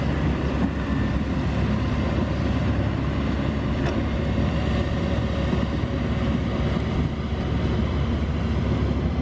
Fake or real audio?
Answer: real